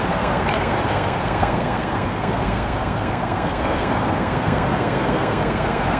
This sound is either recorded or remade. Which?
remade